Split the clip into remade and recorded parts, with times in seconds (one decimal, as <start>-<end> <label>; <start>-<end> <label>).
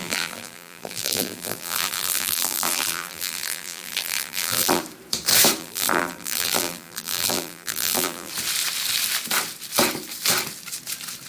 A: 0.0-4.8 remade; 4.8-5.6 recorded; 5.6-8.3 remade; 8.3-11.3 recorded